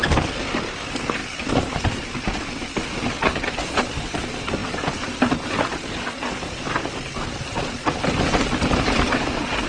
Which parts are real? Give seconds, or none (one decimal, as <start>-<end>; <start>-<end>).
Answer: 0.0-9.7